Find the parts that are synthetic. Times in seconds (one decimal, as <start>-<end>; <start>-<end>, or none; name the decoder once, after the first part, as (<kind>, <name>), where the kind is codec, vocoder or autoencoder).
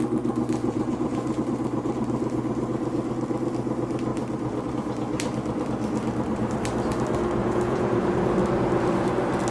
0.6-1.4 (vocoder, Vocos); 7.4-8.1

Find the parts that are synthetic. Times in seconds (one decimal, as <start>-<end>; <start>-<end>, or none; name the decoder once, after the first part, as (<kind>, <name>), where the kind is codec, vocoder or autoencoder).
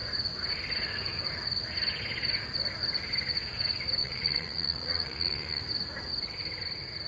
4.0-5.6 (vocoder, Vocos)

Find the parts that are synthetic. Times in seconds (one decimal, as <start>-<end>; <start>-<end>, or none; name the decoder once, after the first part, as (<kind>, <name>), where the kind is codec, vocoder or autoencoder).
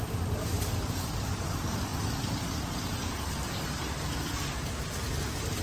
none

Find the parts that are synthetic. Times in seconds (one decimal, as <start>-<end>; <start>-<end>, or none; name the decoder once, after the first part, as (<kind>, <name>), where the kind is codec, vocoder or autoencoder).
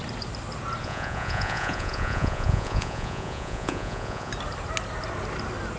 0.8-4.3 (vocoder, Vocos)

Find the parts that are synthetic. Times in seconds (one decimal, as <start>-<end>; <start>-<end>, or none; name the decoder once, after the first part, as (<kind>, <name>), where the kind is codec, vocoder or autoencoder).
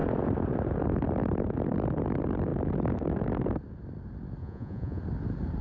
4.4-5.0 (vocoder, Vocos)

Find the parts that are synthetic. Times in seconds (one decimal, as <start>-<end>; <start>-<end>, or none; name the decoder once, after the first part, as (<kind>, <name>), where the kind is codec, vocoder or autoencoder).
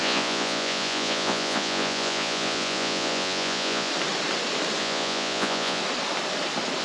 0.0-3.9 (vocoder, Vocos); 4.8-5.8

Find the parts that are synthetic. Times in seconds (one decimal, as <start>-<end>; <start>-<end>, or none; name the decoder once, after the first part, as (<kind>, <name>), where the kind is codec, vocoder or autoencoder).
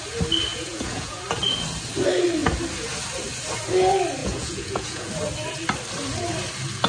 0.5-1.2 (vocoder, Vocos); 4.2-5.1